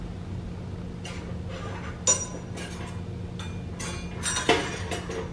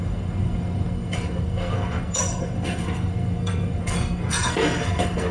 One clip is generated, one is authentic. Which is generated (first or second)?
second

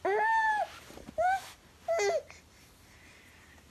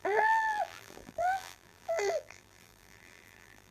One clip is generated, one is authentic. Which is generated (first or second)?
second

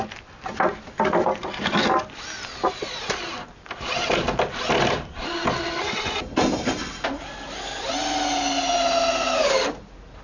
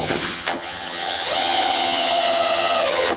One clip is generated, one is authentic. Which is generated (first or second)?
second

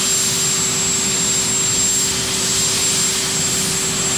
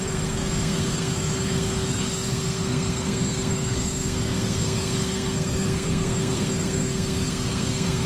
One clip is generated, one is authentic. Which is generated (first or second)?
second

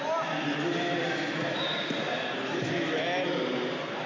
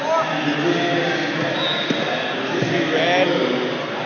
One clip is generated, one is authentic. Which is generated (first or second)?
first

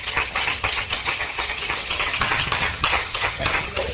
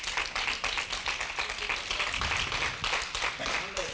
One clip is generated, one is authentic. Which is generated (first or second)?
first